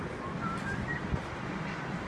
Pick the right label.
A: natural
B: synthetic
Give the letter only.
A